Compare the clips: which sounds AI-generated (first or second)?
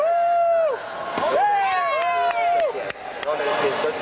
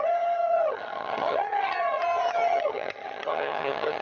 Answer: second